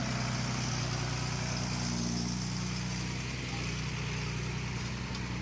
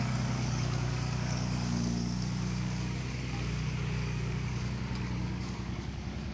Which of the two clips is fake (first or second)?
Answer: second